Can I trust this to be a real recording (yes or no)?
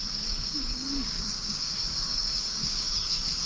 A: no